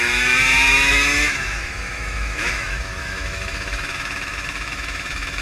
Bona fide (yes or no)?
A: no